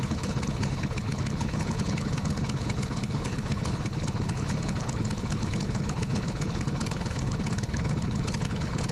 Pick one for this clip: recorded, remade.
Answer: remade